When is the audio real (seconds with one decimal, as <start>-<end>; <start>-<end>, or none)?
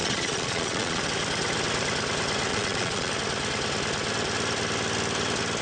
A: 1.0-2.5; 3.1-5.6